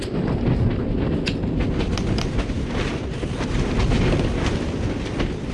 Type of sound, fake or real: real